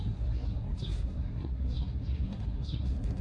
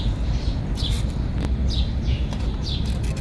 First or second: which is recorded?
second